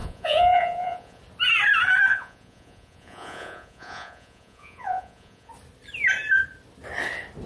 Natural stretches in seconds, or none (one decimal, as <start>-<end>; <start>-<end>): 1.2-2.1; 5.5-7.5